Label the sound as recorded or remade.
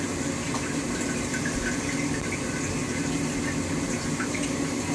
recorded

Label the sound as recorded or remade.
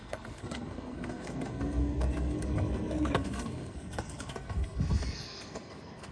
remade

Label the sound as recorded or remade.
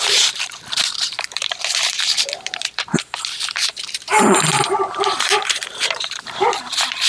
remade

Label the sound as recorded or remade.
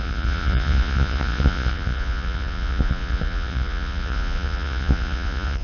remade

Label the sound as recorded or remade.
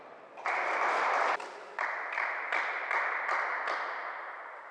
recorded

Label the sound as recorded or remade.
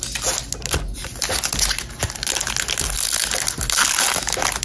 recorded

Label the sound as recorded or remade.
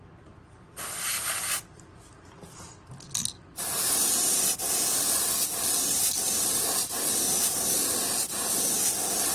recorded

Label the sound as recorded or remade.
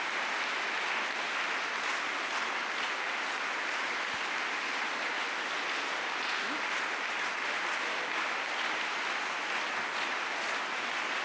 recorded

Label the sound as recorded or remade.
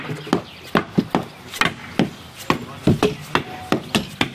recorded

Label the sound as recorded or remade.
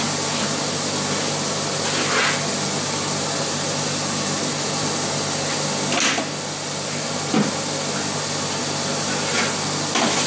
recorded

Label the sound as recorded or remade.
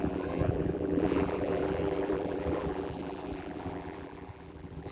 remade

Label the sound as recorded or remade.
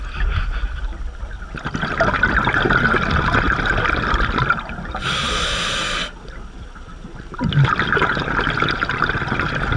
recorded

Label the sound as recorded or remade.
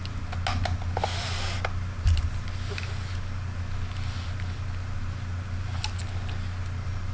recorded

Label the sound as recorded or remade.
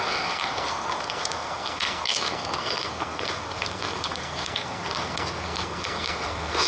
remade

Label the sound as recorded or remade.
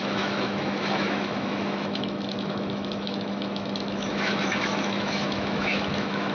remade